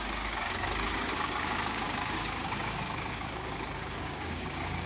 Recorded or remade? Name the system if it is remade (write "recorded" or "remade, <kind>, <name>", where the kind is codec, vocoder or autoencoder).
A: remade, codec, DAC